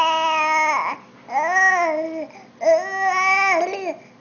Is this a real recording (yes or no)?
yes